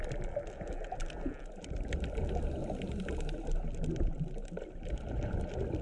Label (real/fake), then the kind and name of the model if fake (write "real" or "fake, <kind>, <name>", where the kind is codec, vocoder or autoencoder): real